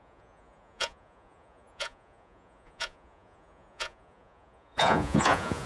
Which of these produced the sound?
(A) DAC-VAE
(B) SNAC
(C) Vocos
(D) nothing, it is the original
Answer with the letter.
C